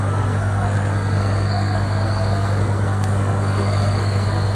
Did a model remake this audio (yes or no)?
yes